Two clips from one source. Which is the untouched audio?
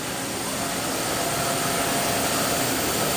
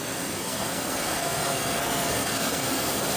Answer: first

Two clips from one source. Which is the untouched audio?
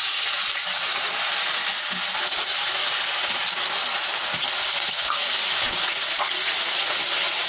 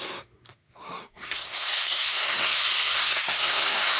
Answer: first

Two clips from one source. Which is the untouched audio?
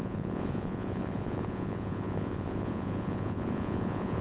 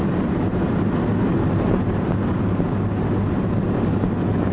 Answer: second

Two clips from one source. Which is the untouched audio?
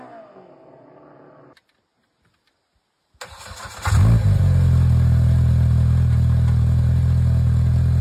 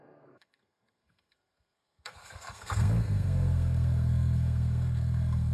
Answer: first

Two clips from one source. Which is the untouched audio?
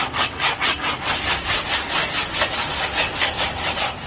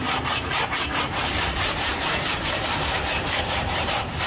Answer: first